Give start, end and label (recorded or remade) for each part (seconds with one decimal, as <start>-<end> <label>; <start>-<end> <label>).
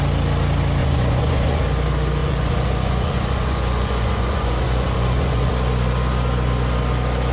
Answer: 0.0-0.8 recorded; 0.8-1.6 remade; 1.6-2.2 recorded; 2.2-5.5 remade; 5.5-7.3 recorded